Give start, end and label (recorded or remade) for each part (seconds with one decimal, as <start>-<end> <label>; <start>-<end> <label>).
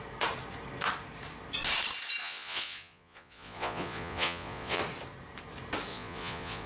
0.0-2.2 recorded; 2.2-4.8 remade; 4.8-5.9 recorded; 5.9-6.7 remade